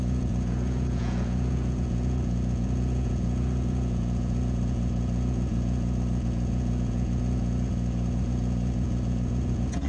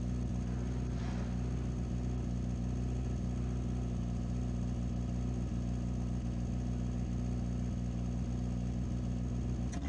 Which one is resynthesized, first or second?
first